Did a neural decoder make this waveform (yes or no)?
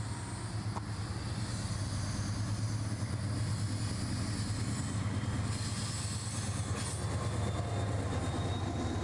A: no